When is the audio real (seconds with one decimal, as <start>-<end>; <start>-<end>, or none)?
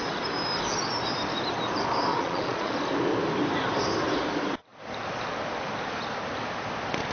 0.0-2.1; 2.7-7.1